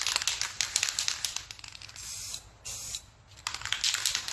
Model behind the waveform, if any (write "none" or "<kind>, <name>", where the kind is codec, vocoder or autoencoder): none